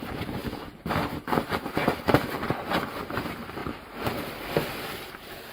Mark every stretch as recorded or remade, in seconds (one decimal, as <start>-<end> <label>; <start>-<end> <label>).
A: 0.0-5.5 recorded